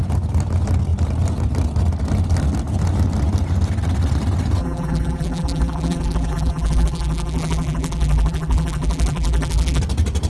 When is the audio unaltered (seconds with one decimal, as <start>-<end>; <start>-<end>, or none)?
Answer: 0.0-4.6; 9.8-10.3